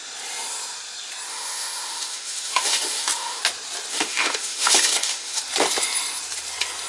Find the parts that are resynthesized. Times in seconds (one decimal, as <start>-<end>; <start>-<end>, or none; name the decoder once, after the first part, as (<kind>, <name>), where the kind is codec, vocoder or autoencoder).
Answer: 1.3-3.4 (autoencoder, DAC-VAE); 3.9-5.4